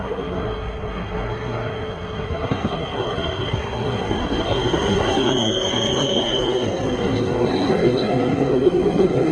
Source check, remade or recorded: remade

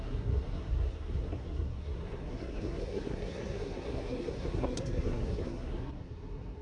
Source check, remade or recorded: remade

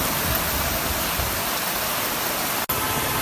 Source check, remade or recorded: recorded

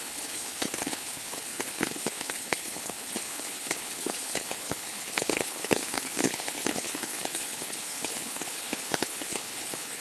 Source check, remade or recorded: remade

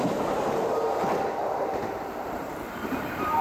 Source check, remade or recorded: remade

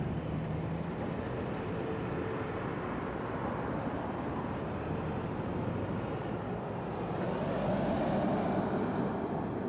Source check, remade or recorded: recorded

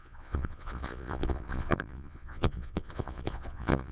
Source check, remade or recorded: remade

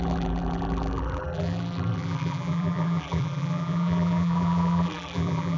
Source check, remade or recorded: remade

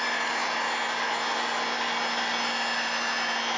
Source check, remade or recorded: recorded